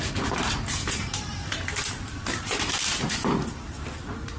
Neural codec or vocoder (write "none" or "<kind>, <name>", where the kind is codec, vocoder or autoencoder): vocoder, BigVGAN v2